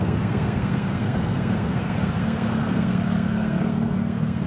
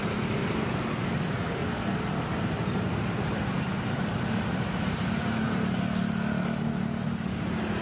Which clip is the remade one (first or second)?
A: first